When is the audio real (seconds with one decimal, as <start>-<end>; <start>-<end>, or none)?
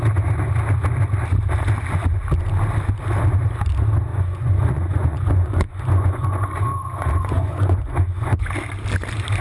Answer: 0.0-4.1; 8.5-9.4